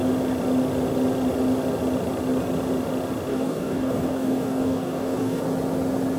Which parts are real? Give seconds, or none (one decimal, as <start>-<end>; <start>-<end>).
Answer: 0.0-3.3; 5.4-6.2